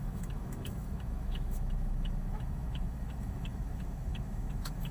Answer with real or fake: fake